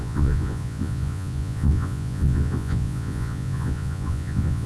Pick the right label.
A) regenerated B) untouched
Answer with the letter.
A